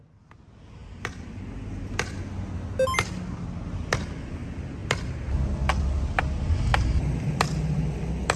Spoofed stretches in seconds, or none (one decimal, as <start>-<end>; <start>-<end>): 6.7-7.3